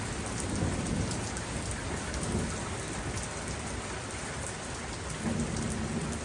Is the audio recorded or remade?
recorded